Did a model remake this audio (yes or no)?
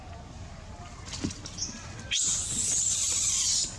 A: no